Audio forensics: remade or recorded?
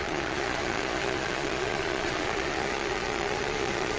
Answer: remade